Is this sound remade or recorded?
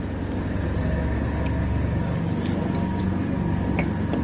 recorded